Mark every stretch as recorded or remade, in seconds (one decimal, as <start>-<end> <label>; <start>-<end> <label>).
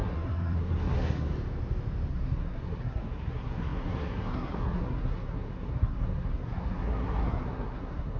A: 0.0-1.3 remade; 1.3-2.1 recorded; 2.1-8.2 remade